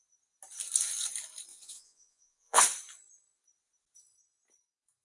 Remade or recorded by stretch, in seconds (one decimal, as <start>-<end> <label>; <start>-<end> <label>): 0.0-1.5 recorded; 1.5-2.6 remade; 2.6-5.0 recorded

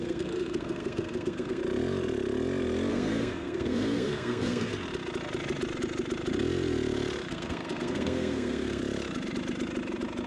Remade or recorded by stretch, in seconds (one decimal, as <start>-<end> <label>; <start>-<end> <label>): 0.0-1.6 remade; 1.6-2.9 recorded; 2.9-4.7 remade; 4.7-7.3 recorded; 7.3-8.8 remade; 8.8-10.3 recorded